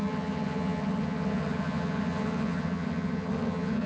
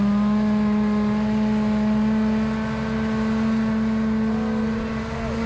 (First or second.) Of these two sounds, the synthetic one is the first